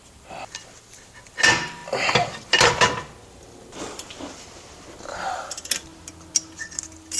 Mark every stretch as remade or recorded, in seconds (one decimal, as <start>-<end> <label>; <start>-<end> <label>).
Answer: 0.0-7.2 recorded